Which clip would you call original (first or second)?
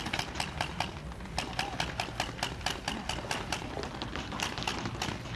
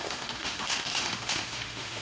first